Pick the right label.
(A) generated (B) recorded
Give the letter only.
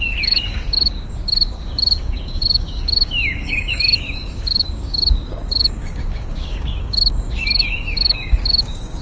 A